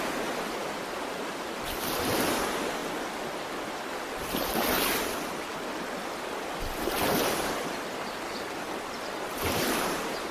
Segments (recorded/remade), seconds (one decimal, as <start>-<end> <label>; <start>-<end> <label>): 0.0-10.3 recorded